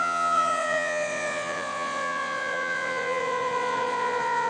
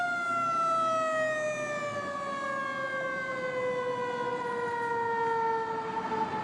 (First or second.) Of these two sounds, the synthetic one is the first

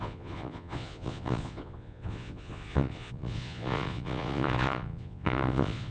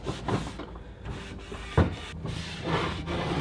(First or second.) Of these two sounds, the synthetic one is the first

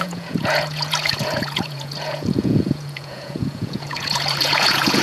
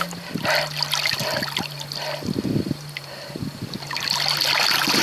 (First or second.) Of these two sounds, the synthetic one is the first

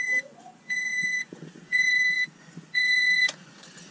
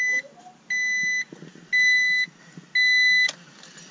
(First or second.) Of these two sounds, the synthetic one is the first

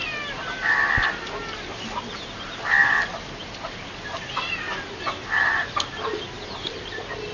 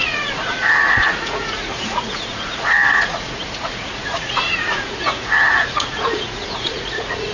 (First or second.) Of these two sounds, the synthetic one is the second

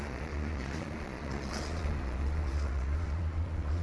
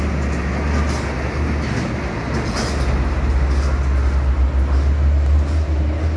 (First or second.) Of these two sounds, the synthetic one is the first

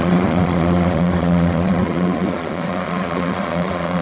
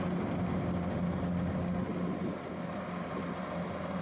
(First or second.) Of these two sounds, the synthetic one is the first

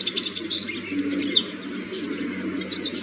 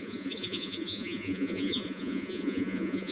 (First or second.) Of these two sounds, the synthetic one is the second